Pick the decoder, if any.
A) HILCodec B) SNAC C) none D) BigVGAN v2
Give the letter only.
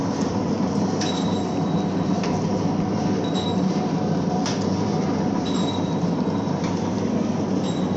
D